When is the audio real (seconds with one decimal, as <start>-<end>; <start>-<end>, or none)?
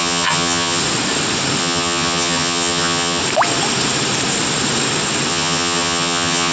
0.8-1.6; 3.2-5.3